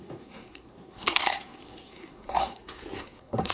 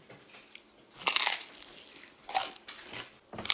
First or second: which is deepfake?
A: first